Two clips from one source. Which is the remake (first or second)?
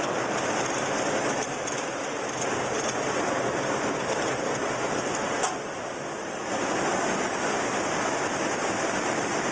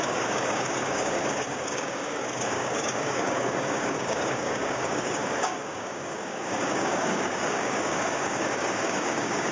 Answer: second